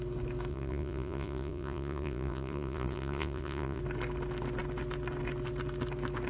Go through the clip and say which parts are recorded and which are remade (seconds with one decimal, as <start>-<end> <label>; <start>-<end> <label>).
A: 0.0-0.5 recorded; 0.5-3.8 remade; 3.8-6.3 recorded